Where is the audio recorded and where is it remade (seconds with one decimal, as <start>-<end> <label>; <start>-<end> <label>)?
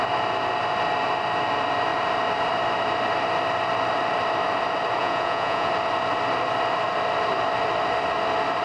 0.0-5.0 recorded; 5.0-5.7 remade; 5.7-8.6 recorded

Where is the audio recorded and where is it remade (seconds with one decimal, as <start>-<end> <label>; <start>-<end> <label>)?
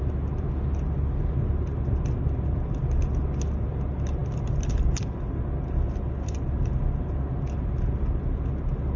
0.0-9.0 recorded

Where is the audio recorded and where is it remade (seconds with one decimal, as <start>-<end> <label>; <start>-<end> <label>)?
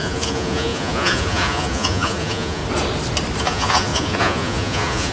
0.0-2.6 remade; 2.6-3.4 recorded; 3.4-5.1 remade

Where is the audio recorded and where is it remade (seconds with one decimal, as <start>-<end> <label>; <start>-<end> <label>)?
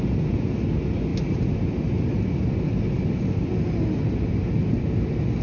0.0-5.4 recorded